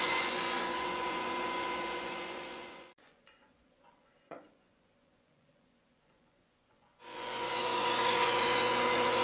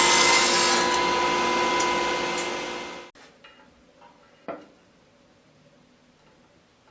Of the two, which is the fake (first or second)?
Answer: first